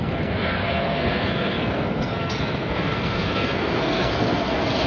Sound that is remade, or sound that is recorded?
remade